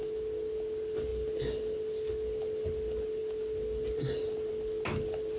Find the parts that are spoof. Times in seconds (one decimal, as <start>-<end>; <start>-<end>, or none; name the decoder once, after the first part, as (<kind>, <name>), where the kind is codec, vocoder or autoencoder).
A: none